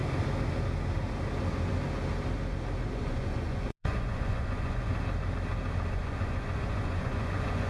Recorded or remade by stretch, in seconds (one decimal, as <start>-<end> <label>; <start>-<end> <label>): 0.0-2.9 recorded; 2.9-4.9 remade; 4.9-5.9 recorded; 5.9-7.7 remade